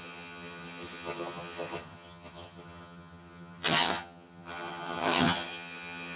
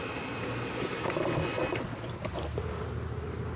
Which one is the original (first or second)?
second